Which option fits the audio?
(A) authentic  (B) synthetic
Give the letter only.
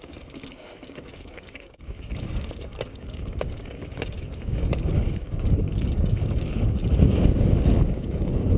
B